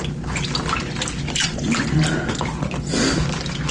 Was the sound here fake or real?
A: real